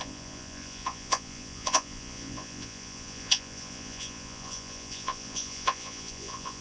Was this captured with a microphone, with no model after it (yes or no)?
no